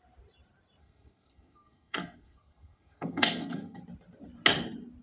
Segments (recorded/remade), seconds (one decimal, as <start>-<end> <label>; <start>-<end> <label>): 0.0-0.8 recorded; 0.8-3.8 remade; 3.8-5.0 recorded